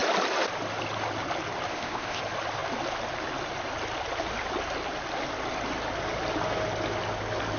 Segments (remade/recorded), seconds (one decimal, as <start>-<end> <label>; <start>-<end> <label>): 0.0-1.7 recorded; 1.7-2.2 remade; 2.2-7.6 recorded